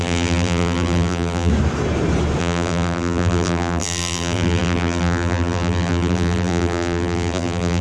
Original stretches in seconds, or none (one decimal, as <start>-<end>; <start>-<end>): 1.5-2.4